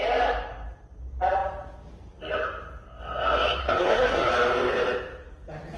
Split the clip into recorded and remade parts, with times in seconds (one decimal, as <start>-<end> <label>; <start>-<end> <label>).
0.0-3.6 recorded; 3.6-4.3 remade; 4.3-5.8 recorded

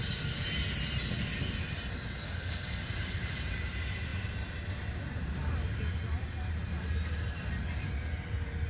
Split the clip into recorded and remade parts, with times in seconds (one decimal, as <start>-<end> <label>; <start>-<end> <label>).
0.0-2.2 recorded; 2.2-2.8 remade; 2.8-8.7 recorded